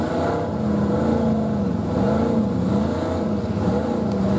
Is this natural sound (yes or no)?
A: yes